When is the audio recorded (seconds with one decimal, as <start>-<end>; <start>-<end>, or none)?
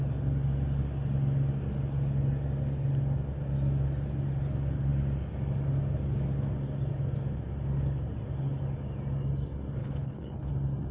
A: 0.0-9.8; 10.5-10.9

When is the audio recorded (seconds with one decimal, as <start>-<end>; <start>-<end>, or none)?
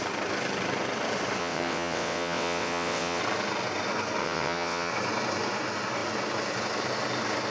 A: 0.0-1.4; 3.2-4.2; 4.9-7.5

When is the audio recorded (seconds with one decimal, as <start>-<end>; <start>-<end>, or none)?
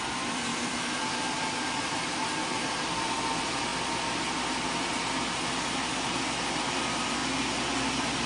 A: 3.7-6.8; 7.2-8.3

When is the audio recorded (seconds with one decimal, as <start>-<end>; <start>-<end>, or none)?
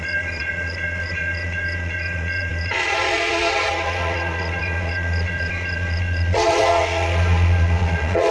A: none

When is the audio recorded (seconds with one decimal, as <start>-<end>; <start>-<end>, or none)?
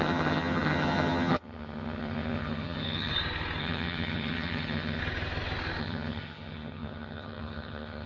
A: 3.1-3.6; 5.0-5.8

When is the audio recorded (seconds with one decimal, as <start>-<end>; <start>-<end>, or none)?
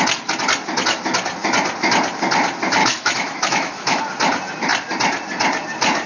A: 0.0-2.8; 4.0-6.1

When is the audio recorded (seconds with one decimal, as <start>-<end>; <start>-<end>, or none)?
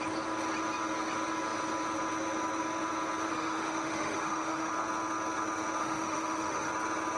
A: 0.0-3.3; 4.7-5.8; 6.7-7.2